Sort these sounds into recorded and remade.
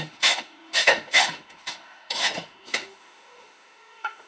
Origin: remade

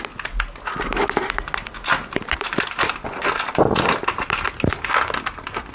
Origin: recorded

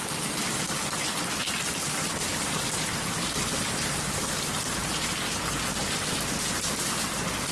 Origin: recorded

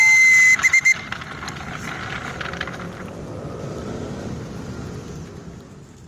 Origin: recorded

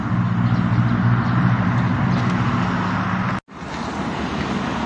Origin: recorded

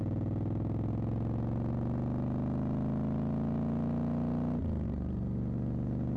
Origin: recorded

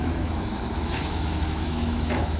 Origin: remade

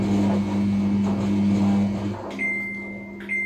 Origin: recorded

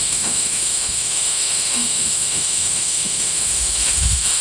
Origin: remade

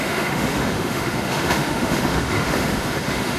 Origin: remade